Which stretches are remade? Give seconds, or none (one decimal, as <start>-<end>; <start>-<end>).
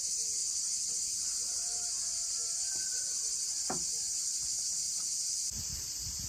0.0-0.4; 0.9-1.7; 2.7-6.3